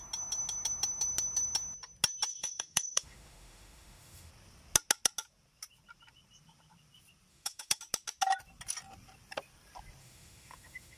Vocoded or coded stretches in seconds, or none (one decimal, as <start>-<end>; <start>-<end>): 2.3-4.3; 7.3-7.8; 10.0-11.0